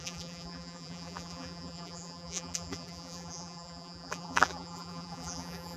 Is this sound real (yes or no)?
no